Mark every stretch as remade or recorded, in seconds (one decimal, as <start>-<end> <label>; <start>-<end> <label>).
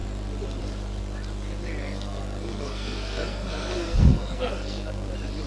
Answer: 0.0-1.8 recorded; 1.8-5.1 remade; 5.1-5.5 recorded